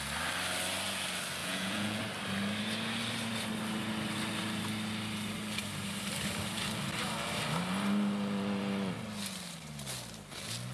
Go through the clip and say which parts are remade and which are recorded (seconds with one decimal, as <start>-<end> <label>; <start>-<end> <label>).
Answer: 0.0-1.4 recorded; 1.4-2.0 remade; 2.0-10.7 recorded